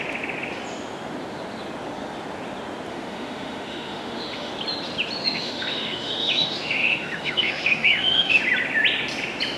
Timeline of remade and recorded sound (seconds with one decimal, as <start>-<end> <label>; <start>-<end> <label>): 0.0-2.9 recorded; 2.9-4.5 remade; 4.5-5.2 recorded; 5.2-8.4 remade; 8.4-9.6 recorded